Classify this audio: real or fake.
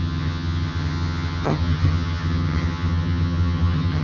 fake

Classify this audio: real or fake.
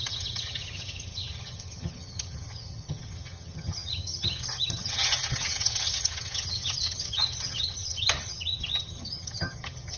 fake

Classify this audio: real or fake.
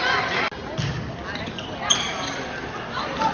real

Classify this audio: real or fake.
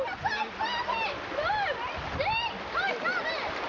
real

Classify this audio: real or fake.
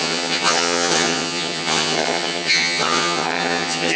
fake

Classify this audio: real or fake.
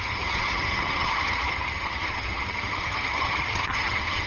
fake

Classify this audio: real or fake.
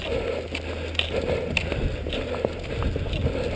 real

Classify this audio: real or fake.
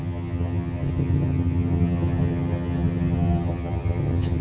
fake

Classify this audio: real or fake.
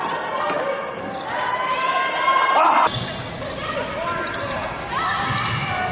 real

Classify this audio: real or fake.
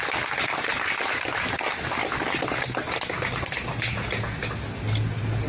real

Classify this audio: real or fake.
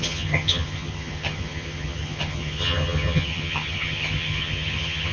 fake